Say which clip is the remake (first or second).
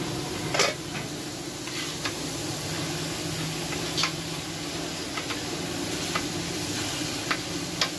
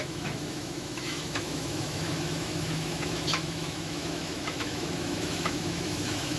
second